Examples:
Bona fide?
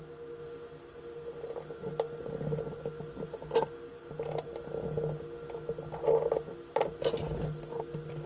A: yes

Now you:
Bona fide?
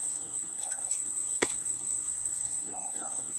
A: no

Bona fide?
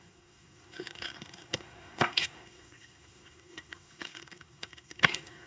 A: no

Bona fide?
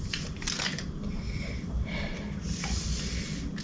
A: yes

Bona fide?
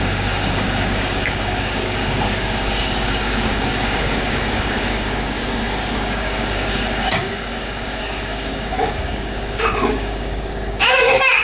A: no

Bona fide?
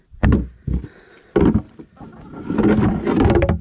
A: yes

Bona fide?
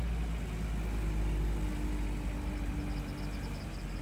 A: yes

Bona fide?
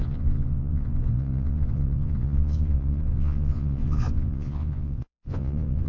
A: no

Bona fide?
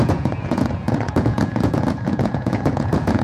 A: no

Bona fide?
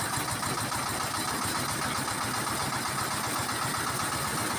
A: yes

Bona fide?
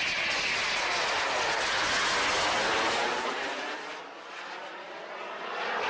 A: yes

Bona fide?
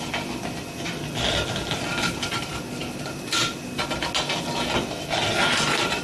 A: yes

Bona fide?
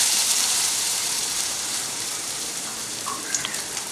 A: no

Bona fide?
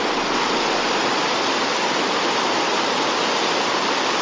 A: yes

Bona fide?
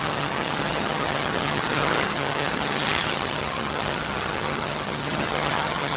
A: no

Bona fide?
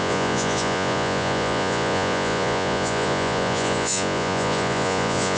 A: no